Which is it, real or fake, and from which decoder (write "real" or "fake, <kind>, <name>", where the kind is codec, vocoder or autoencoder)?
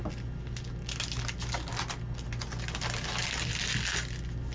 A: real